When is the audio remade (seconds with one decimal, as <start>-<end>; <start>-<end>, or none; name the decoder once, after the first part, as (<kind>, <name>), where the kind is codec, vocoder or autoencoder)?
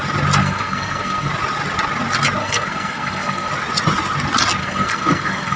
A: 0.4-1.3 (codec, SNAC); 2.4-3.5; 4.6-5.6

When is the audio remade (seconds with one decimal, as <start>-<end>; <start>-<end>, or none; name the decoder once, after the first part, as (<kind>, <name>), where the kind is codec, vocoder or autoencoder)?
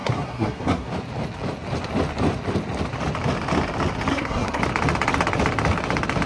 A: 0.0-0.9 (codec, SNAC); 4.1-4.6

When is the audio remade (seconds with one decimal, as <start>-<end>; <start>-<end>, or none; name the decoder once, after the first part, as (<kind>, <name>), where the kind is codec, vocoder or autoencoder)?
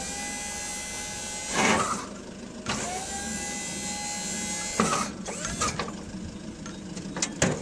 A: none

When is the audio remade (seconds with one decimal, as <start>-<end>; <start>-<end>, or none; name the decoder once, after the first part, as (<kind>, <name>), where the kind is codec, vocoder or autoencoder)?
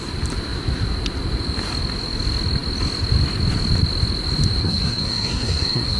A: 4.6-6.0 (codec, SNAC)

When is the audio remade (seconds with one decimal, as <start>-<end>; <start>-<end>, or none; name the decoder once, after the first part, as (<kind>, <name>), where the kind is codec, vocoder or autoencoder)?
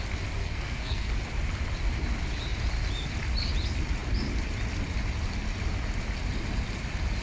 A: 0.4-1.1 (codec, SNAC)